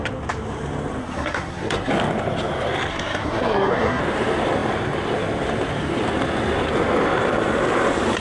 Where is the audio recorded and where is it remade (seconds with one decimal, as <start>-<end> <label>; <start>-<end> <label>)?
0.0-1.0 recorded; 1.0-1.9 remade; 1.9-2.9 recorded; 2.9-4.0 remade; 4.0-8.2 recorded